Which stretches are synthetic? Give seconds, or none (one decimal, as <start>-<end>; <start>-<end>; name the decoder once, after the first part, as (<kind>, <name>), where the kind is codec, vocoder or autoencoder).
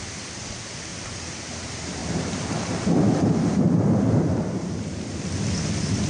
0.9-1.5 (vocoder, BigVGAN v2); 2.0-5.0